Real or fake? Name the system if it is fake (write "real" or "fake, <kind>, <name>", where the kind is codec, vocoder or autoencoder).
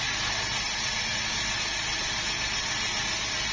real